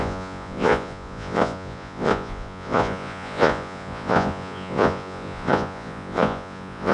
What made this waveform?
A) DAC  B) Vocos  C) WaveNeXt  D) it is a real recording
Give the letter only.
B